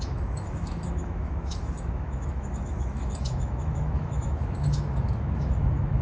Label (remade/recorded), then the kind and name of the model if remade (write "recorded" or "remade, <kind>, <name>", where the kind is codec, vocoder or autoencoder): remade, autoencoder, DAC-VAE